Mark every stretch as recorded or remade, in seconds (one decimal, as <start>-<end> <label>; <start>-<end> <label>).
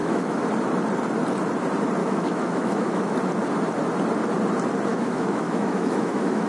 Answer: 0.0-0.5 remade; 0.5-2.0 recorded; 2.0-3.1 remade; 3.1-4.9 recorded; 4.9-6.5 remade